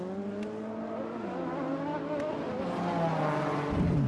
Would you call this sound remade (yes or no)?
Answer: no